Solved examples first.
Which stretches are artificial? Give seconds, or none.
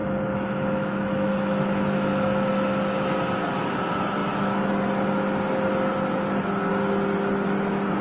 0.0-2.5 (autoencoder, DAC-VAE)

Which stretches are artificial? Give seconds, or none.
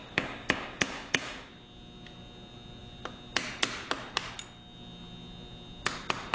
0.0-1.5 (codec, DAC)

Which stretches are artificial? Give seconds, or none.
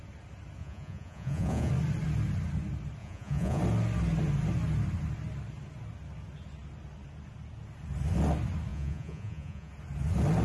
0.6-1.7 (vocoder, Vocos); 3.0-3.6; 8.7-9.7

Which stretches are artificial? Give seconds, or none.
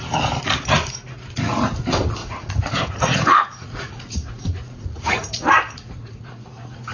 2.2-6.3 (vocoder, Vocos)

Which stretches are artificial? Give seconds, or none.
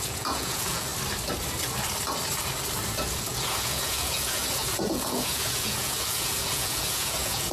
0.0-0.9 (vocoder, Vocos); 3.0-7.5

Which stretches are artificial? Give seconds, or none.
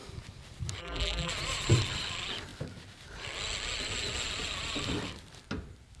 0.8-1.3 (vocoder, BigVGAN v2)